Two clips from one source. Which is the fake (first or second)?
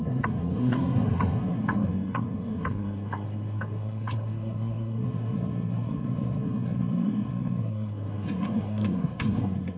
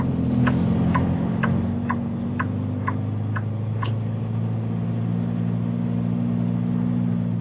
first